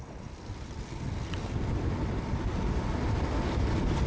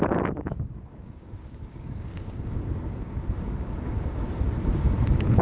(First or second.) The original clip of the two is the first